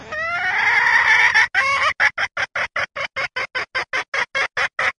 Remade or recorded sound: recorded